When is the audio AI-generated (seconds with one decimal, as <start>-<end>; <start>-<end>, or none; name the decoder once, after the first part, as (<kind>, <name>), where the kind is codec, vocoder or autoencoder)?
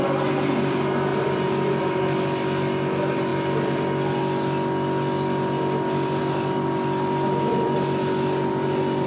none